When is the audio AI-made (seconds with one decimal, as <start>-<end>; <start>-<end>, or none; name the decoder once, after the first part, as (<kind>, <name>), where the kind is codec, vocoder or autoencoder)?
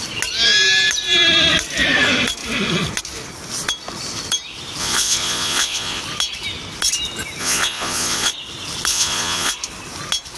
4.8-6.0 (vocoder, Vocos); 7.4-8.3; 8.9-9.5